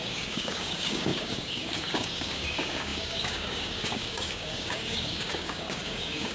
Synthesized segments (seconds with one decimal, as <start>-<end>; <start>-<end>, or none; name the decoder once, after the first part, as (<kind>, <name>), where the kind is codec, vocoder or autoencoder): 0.0-6.3 (codec, DAC)